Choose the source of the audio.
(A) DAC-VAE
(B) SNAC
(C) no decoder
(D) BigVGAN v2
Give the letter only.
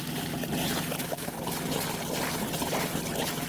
C